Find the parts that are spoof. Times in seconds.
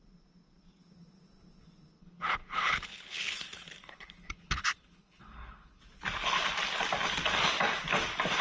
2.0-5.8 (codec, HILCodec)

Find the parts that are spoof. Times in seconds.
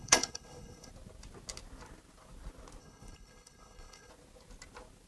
0.0-0.9 (codec, HILCodec); 2.8-4.1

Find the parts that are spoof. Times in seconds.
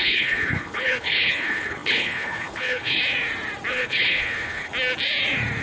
0.0-3.0 (codec, HILCodec); 3.7-4.7